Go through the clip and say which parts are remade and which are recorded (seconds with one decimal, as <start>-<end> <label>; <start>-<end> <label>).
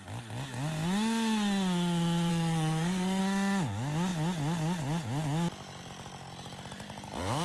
0.0-2.3 recorded; 2.3-3.2 remade; 3.2-7.4 recorded